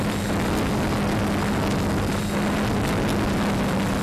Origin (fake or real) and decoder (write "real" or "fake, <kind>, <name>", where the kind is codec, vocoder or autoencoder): real